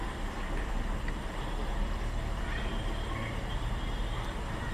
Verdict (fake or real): fake